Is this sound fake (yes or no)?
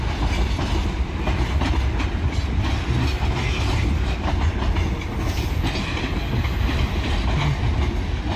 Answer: no